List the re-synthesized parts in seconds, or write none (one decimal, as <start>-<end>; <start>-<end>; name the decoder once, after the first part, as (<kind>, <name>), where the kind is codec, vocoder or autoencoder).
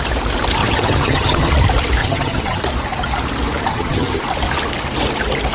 0.6-1.5 (vocoder, HiFi-GAN); 2.0-2.6; 3.7-4.2